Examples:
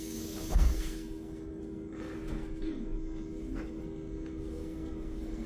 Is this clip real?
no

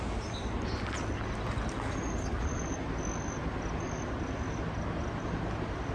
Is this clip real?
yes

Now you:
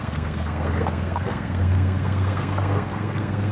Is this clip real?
no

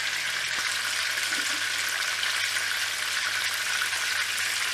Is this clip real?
yes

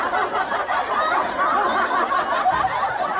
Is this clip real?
yes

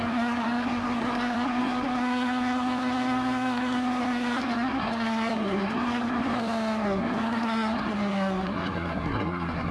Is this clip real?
no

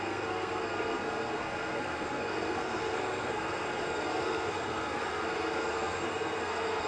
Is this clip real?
no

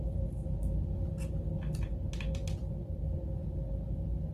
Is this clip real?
yes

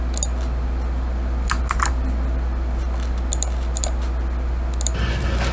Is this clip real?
yes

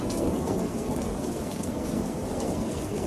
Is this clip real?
no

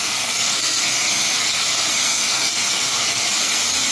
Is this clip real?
no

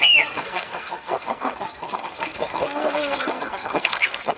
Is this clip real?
no